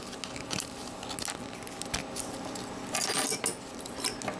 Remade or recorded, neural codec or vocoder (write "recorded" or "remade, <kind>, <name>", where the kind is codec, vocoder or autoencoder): recorded